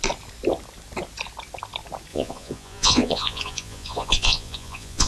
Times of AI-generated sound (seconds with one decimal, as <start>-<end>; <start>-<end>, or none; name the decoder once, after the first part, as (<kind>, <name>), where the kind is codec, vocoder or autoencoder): 2.1-5.1 (vocoder, Vocos)